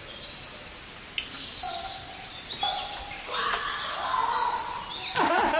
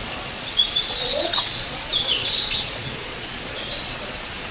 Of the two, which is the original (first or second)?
first